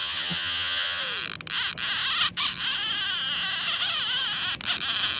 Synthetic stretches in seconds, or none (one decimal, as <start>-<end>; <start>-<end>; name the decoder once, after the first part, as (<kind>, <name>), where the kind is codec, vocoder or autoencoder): 0.0-1.0 (vocoder, HiFi-GAN)